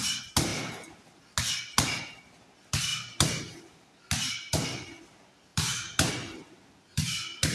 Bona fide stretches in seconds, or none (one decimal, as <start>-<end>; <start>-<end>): 0.0-5.5; 6.1-7.5